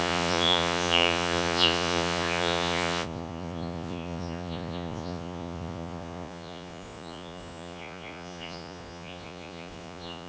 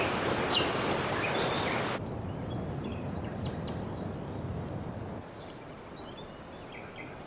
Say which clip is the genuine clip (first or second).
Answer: second